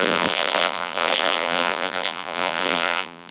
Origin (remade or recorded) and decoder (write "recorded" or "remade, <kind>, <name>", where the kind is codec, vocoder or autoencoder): remade, vocoder, BigVGAN v2